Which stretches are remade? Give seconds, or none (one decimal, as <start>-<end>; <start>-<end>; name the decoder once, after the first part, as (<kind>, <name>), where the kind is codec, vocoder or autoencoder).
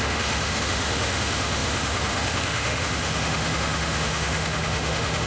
0.0-5.3 (autoencoder, DAC-VAE)